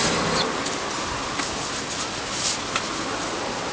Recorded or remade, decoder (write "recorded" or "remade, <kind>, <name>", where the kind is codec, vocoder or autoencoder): recorded